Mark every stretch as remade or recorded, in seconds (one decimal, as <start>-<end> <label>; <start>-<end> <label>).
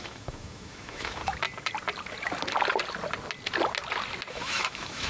0.0-1.2 remade; 1.2-4.3 recorded; 4.3-5.1 remade